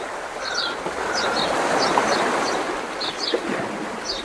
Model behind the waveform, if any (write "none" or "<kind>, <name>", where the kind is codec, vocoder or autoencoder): none